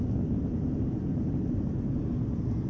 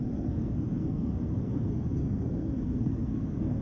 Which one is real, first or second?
first